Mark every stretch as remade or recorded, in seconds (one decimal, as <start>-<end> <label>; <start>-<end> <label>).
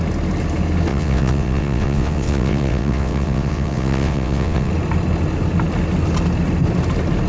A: 0.0-0.9 recorded; 0.9-4.7 remade; 4.7-7.3 recorded